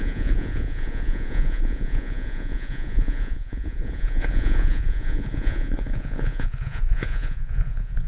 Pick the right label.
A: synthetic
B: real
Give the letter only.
A